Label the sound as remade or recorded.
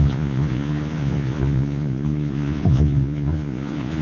remade